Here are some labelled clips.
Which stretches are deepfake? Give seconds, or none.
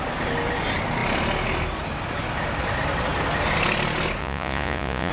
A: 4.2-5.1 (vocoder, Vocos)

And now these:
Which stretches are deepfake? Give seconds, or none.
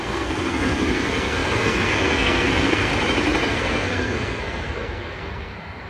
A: 0.0-2.9 (codec, SNAC); 3.5-5.9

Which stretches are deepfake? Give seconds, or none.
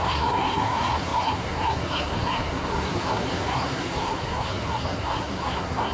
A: 0.0-5.9 (codec, SNAC)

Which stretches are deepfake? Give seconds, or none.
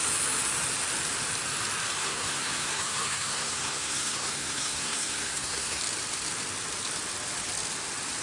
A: 2.0-5.8 (codec, SNAC)